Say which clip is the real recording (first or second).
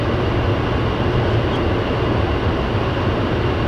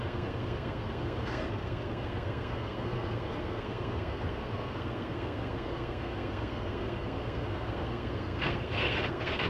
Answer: first